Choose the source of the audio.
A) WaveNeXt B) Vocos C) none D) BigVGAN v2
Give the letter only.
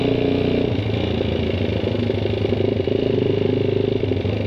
C